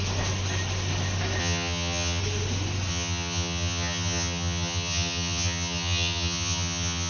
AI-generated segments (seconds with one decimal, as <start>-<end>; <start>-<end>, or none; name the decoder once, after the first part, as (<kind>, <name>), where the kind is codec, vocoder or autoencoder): 1.4-2.2 (vocoder, HiFi-GAN); 2.9-7.1